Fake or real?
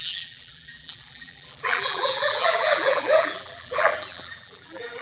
fake